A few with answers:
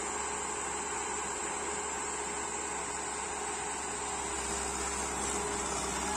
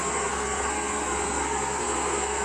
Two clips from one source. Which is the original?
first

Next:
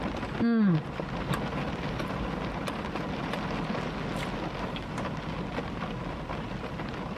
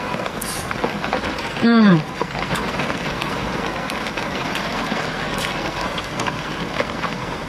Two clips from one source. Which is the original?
first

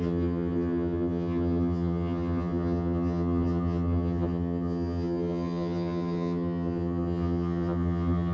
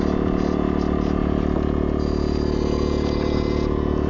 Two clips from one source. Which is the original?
second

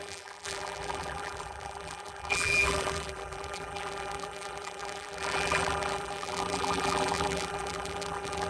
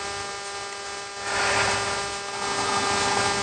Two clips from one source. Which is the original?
second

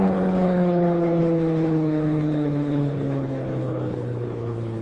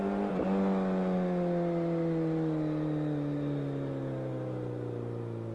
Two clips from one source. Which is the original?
second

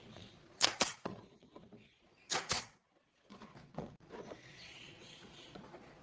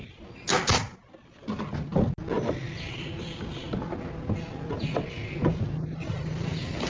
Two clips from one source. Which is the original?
second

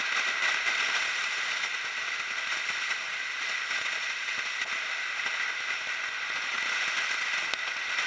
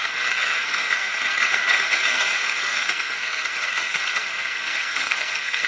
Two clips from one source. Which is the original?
first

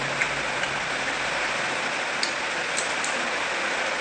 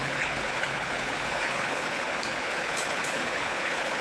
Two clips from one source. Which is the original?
first